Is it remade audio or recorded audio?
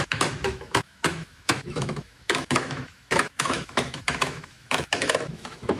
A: remade